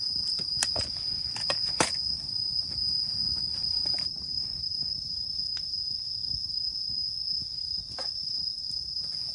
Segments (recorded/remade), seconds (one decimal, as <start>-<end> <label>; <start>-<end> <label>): 0.0-9.3 recorded

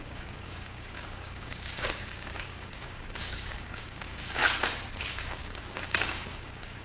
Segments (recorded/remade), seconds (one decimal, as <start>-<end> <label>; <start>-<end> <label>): 0.0-4.4 remade; 4.4-5.0 recorded; 5.0-6.8 remade

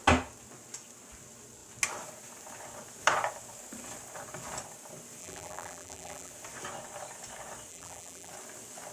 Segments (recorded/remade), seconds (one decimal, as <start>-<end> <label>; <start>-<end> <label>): 0.0-5.2 recorded; 5.2-6.3 remade; 6.3-7.7 recorded; 7.7-8.3 remade; 8.3-8.9 recorded

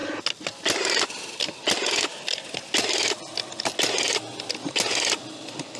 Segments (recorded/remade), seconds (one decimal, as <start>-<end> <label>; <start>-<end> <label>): 0.0-5.8 recorded